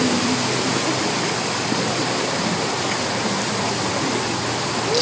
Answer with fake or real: real